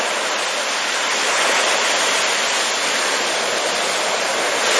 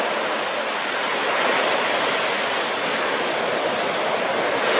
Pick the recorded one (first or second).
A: second